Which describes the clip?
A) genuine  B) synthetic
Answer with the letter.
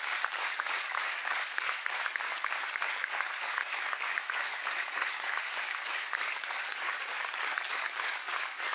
B